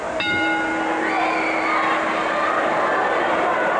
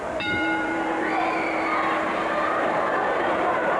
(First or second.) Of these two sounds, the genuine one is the first